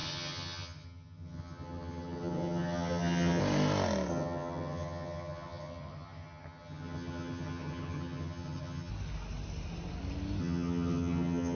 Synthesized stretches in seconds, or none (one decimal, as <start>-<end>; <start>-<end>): 0.0-3.4; 4.1-8.9; 10.4-11.6